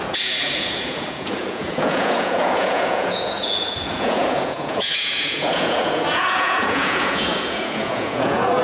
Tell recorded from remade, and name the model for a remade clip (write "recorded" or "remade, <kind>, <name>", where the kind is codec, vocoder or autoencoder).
remade, vocoder, Vocos